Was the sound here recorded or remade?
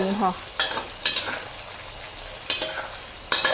recorded